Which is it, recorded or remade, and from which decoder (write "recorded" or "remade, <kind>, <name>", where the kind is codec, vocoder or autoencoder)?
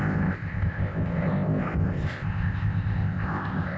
remade, codec, ZipCodec